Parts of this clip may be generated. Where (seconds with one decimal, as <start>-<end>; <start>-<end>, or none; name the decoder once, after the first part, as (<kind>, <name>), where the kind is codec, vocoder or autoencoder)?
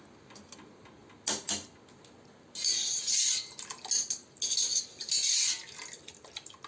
none